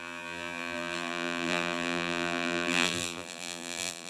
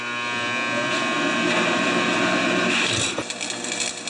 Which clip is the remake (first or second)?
first